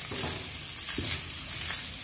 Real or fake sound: real